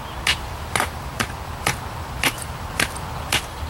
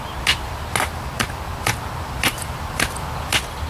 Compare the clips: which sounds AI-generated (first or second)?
first